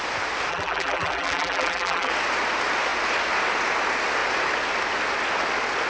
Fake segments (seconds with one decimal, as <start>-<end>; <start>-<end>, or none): 0.5-2.1